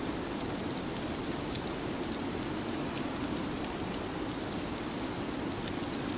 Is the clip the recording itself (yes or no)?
yes